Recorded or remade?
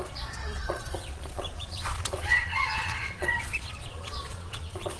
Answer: remade